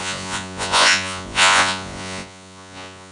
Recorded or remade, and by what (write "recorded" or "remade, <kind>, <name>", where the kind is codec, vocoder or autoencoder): remade, vocoder, Vocos